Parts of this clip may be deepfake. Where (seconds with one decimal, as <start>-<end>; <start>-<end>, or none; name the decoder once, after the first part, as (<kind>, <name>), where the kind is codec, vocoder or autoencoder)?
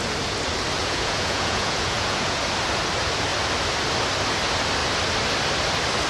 0.8-2.4 (vocoder, Vocos)